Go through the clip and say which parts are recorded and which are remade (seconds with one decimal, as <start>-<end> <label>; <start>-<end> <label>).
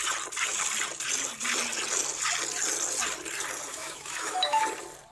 0.0-3.7 recorded; 3.7-4.6 remade; 4.6-5.1 recorded